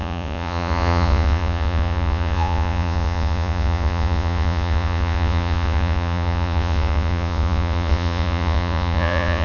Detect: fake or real fake